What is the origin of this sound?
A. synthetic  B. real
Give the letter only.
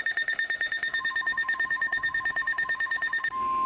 A